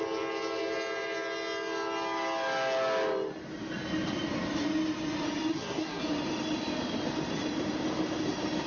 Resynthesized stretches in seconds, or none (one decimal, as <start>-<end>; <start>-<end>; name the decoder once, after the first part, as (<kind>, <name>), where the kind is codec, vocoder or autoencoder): 5.5-6.0 (codec, SNAC)